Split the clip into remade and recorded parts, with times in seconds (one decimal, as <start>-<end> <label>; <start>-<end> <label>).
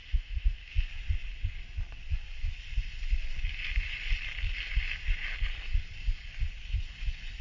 0.0-0.7 remade; 0.7-7.4 recorded